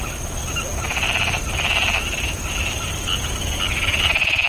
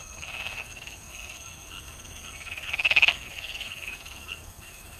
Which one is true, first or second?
first